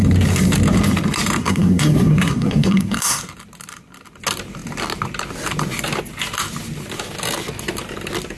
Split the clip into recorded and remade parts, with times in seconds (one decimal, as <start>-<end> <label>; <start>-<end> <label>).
0.0-1.4 recorded; 1.4-3.2 remade; 3.2-8.4 recorded